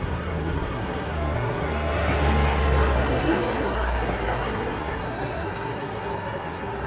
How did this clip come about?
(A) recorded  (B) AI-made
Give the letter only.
B